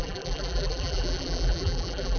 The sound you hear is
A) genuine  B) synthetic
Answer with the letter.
B